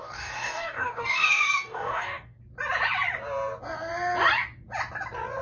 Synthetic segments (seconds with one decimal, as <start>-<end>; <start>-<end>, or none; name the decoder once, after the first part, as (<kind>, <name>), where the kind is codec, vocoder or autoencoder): 0.0-2.4 (codec, DAC)

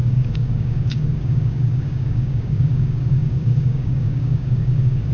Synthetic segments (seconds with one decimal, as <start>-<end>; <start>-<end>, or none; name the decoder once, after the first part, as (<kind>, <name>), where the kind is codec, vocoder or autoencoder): 0.0-5.1 (codec, DAC)